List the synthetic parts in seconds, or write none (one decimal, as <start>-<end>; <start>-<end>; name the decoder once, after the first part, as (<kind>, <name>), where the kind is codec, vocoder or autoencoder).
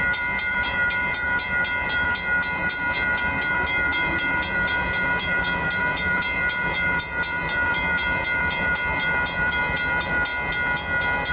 0.0-10.3 (vocoder, BigVGAN v2)